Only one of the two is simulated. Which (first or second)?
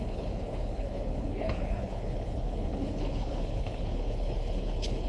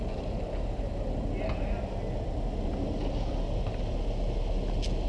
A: first